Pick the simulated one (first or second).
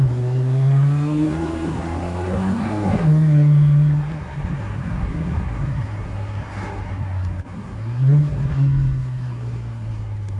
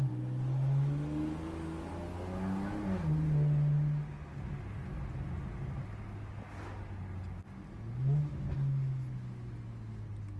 first